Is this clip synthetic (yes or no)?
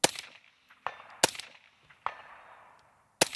no